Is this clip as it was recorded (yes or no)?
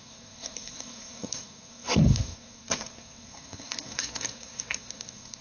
no